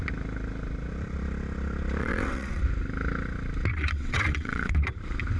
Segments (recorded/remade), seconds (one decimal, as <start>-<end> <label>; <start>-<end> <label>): 0.0-2.0 recorded; 2.0-2.6 remade; 2.6-3.7 recorded; 3.7-4.9 remade; 4.9-5.4 recorded